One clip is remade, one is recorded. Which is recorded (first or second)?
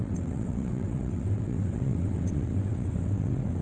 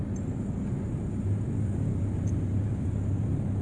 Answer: second